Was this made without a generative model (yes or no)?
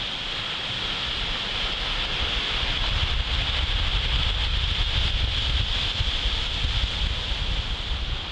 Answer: yes